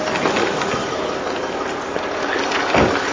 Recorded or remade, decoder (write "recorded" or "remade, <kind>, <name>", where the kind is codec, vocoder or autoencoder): recorded